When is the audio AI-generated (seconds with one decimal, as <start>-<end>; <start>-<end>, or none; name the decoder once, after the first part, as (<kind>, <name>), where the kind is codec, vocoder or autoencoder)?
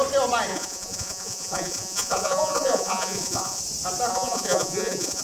0.5-3.6 (vocoder, Vocos); 4.1-5.2